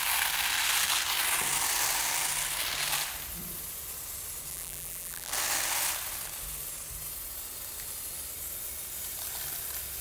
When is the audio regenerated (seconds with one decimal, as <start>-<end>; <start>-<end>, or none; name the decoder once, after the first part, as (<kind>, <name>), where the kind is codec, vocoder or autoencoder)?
4.5-5.3 (vocoder, BigVGAN v2)